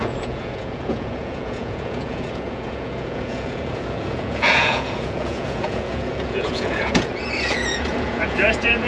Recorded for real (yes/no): no